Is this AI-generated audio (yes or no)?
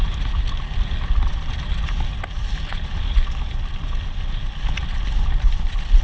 no